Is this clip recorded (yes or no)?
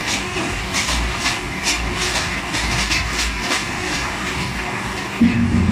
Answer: no